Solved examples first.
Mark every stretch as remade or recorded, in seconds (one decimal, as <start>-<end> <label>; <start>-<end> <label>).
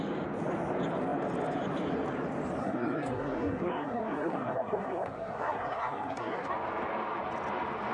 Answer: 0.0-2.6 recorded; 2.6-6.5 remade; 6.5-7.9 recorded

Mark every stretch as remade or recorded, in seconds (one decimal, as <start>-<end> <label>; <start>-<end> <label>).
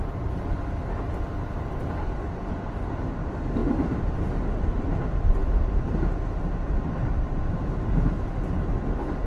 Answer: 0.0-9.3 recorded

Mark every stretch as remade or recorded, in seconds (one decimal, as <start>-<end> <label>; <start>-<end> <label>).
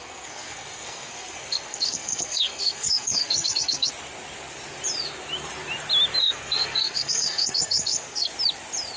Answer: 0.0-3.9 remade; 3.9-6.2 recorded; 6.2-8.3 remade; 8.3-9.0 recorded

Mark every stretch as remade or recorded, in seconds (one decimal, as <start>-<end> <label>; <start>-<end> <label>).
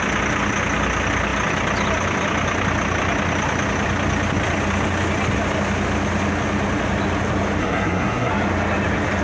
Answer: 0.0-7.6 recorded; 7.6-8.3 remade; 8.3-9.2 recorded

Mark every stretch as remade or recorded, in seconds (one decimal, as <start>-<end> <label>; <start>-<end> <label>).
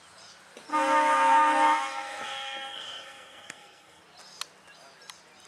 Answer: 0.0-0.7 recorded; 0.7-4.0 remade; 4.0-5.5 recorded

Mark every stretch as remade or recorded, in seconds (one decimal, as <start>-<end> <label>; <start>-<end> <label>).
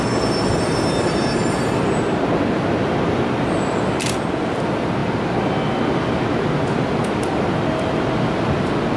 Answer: 0.0-9.0 recorded